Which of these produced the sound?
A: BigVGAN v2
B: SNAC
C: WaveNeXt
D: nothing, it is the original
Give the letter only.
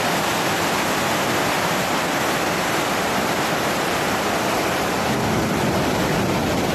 A